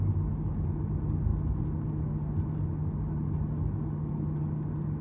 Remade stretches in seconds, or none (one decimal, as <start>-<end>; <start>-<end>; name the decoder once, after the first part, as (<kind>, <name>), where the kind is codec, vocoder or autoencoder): none